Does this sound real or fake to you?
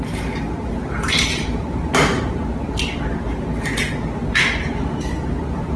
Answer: real